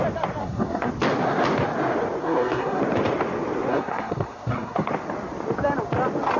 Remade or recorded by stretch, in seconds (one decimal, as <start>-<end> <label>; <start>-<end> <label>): 0.0-0.4 recorded; 0.4-0.9 remade; 0.9-2.2 recorded; 2.2-2.8 remade; 2.8-3.7 recorded; 3.7-4.9 remade; 4.9-6.4 recorded